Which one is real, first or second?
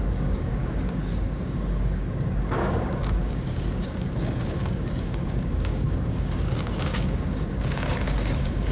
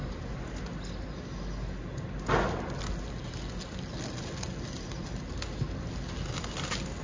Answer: second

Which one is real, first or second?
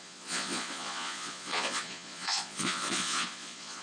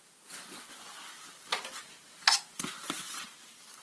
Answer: second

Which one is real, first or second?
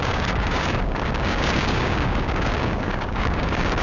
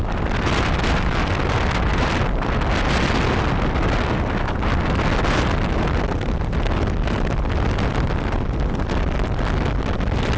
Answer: second